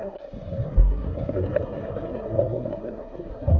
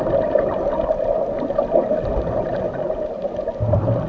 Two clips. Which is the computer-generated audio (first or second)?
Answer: first